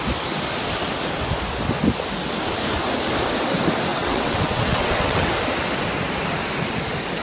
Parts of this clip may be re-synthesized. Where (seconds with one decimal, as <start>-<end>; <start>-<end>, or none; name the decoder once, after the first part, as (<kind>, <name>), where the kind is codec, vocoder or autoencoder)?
3.9-5.3 (vocoder, WaveNeXt)